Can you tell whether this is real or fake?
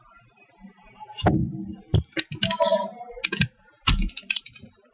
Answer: real